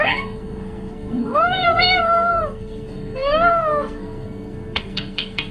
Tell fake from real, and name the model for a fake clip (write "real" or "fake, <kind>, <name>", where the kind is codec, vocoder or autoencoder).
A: fake, codec, SNAC